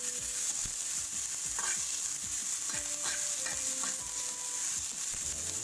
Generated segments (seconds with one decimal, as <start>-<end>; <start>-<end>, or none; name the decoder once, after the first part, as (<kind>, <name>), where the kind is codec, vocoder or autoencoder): none